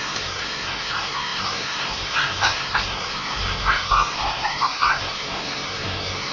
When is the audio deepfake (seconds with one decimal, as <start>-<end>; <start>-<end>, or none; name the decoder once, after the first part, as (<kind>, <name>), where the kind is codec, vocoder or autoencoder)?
0.0-6.3 (codec, SNAC)